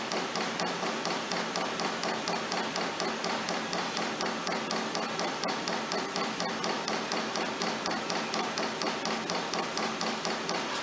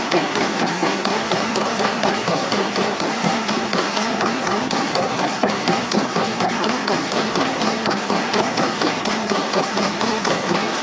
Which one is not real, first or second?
second